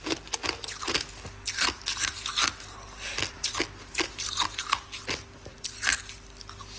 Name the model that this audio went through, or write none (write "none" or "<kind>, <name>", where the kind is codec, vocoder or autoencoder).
none